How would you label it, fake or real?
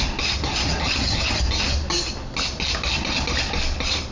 real